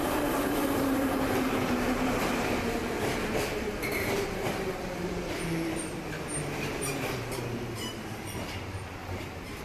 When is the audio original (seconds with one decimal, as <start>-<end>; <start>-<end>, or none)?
none